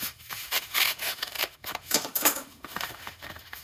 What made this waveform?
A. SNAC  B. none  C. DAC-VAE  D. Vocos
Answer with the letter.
C